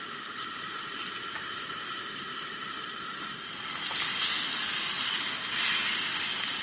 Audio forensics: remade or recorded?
recorded